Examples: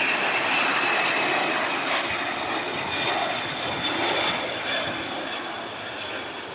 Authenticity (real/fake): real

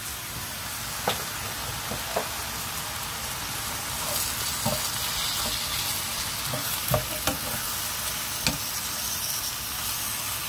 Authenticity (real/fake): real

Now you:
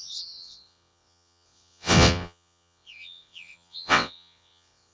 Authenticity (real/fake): fake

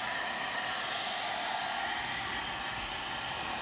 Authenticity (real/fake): real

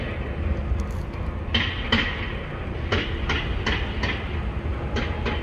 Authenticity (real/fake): real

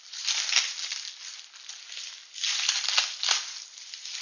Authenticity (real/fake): real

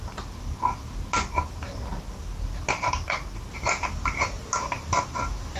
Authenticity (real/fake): real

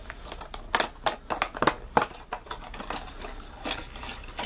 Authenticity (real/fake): real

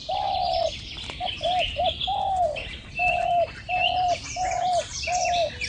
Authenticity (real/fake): fake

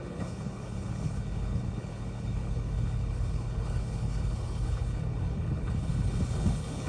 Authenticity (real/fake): fake